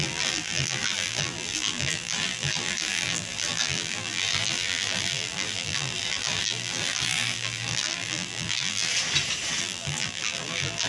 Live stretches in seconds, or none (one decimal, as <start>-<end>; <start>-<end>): 8.9-9.6